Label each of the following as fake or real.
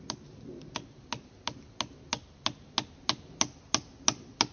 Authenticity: real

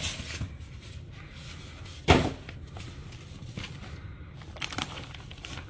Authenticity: real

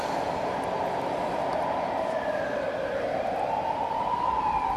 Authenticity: real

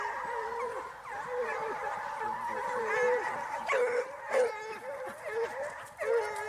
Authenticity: real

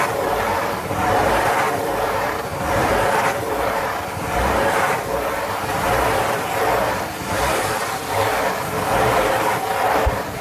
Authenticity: fake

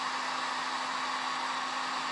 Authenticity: real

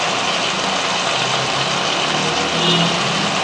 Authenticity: real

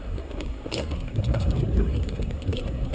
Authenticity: fake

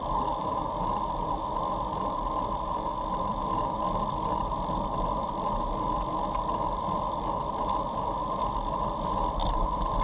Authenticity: real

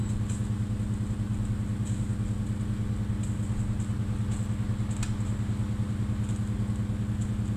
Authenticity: real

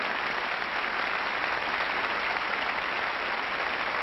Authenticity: real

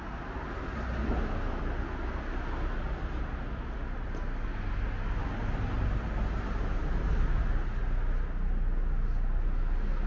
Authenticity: real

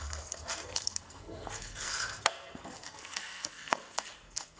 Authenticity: fake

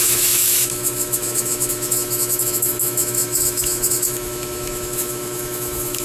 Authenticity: fake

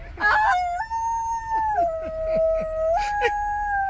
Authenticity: real